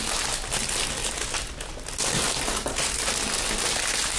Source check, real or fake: real